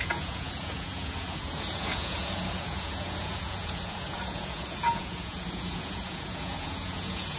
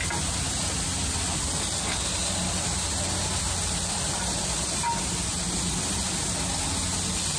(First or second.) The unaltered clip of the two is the second